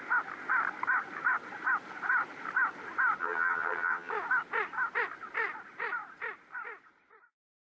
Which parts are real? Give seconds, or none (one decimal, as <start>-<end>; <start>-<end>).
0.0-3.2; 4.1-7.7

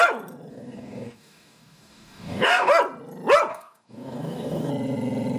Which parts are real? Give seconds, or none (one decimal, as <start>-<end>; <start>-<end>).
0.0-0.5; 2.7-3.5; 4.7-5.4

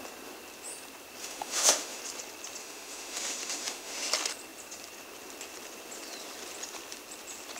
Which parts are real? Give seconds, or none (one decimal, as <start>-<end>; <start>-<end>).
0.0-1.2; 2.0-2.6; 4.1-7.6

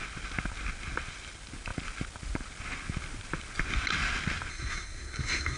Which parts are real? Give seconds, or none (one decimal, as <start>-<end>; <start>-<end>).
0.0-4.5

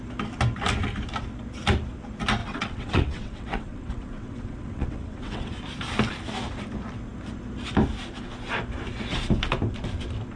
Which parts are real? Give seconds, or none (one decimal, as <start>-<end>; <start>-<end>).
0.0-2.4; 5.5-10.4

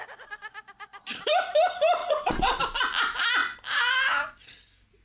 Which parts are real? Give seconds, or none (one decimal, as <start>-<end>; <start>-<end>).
0.0-2.0; 2.6-5.0

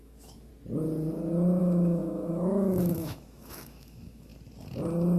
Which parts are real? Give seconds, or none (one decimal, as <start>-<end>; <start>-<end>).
0.5-1.6; 4.3-5.2

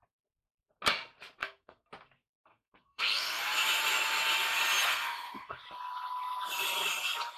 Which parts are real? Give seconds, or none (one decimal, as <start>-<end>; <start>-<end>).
0.0-1.4; 1.9-2.5; 3.4-4.9; 5.6-7.4